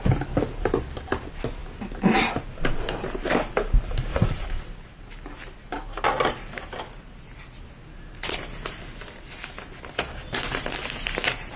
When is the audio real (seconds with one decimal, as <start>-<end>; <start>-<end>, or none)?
0.0-4.1; 4.7-11.6